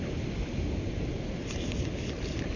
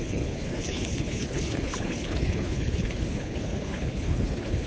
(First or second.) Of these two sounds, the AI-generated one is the second